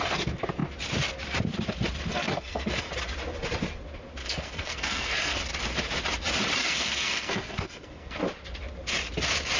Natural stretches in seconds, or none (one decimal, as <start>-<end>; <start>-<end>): 0.0-2.1; 2.9-4.2; 5.4-6.6; 8.2-9.6